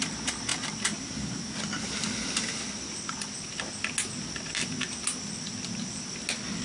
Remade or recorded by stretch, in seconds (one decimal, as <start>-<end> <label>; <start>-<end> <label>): 0.0-6.6 recorded